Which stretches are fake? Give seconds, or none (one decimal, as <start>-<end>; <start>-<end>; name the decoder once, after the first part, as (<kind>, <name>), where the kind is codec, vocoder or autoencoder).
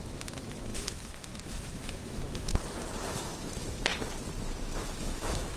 0.0-2.5 (autoencoder, DAC-VAE); 3.1-3.9; 4.6-5.6